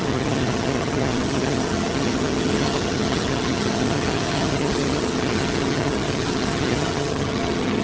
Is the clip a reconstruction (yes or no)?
yes